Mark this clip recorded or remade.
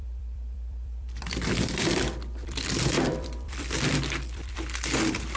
remade